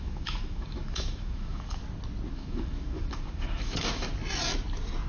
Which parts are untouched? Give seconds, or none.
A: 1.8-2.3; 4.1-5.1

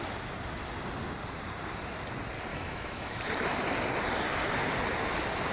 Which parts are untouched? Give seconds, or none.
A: 0.0-2.5; 3.2-5.5

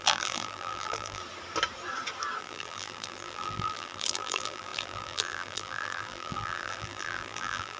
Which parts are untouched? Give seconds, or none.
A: 1.2-2.4

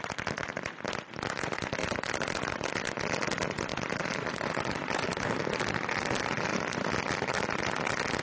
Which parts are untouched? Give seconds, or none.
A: 0.0-1.8; 2.7-3.7; 5.2-8.2

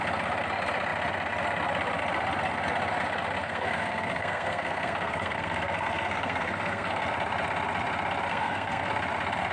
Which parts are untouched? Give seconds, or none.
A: 0.0-3.4; 7.0-8.3; 8.9-9.5

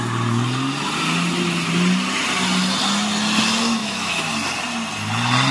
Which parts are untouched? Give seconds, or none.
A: 0.0-3.8; 4.3-5.5